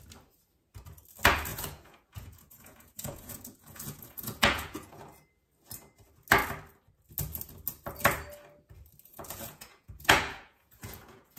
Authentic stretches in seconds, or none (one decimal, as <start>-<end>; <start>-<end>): 0.0-1.5; 5.0-9.1